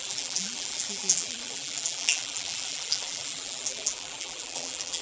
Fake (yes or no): yes